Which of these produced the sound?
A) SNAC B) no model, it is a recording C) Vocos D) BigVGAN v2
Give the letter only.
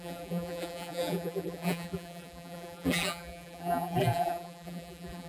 D